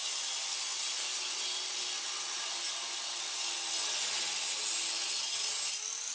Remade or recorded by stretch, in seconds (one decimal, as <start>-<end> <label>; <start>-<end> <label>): 0.0-6.1 recorded